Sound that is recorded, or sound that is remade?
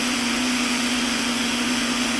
remade